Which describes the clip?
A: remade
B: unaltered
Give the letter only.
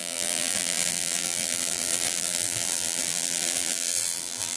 A